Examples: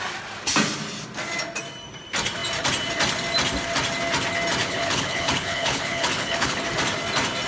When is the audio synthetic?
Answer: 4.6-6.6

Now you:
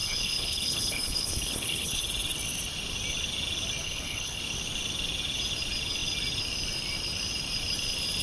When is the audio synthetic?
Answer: 0.0-2.0; 3.8-4.4

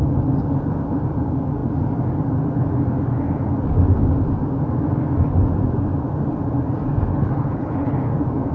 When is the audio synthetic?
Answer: 7.1-7.9

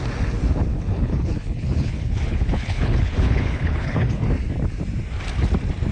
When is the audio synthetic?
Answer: 0.7-4.2